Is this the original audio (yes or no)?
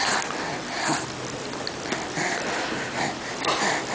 yes